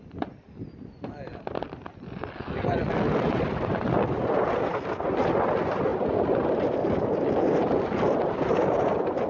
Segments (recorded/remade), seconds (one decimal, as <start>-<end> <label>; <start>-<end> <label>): 0.0-9.3 recorded